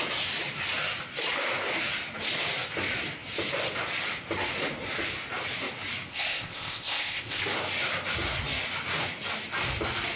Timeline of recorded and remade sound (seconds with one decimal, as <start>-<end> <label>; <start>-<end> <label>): 0.0-6.1 recorded; 6.1-7.4 remade; 7.4-10.2 recorded